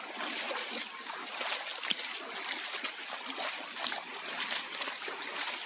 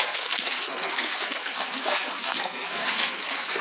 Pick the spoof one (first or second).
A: second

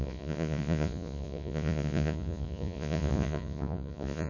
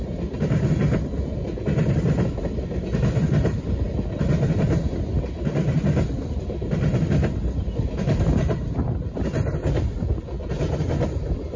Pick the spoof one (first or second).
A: first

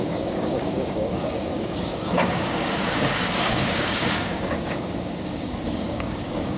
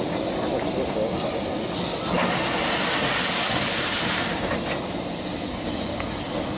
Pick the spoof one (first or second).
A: first